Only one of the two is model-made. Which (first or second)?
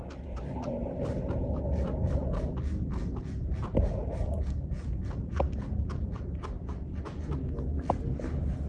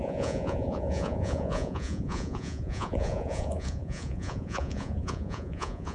second